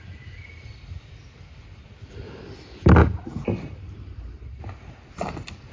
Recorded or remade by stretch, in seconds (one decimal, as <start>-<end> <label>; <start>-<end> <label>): 0.0-3.0 recorded; 3.0-4.6 remade; 4.6-5.7 recorded